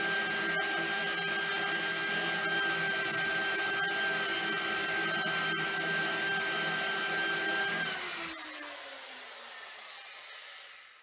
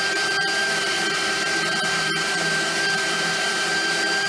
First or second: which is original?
first